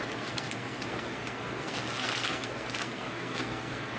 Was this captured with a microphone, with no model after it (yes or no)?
no